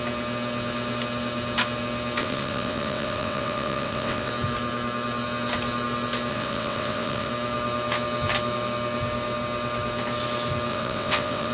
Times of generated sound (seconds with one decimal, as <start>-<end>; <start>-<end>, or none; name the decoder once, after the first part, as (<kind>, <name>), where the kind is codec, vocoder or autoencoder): 2.2-4.3 (vocoder, WaveNeXt); 6.3-7.3; 10.7-11.5